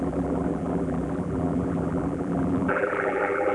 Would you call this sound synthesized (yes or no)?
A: yes